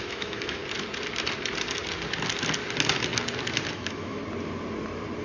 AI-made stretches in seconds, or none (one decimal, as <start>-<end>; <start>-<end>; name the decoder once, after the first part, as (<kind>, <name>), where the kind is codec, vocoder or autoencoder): 0.0-0.6 (autoencoder, DAC-VAE); 3.7-4.2